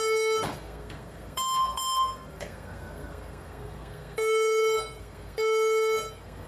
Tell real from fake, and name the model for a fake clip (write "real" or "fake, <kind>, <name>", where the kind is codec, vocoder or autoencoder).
fake, codec, SNAC